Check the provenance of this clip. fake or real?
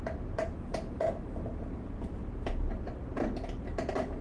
real